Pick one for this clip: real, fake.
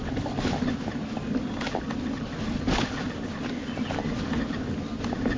real